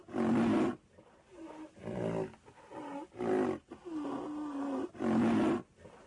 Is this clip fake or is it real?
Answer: real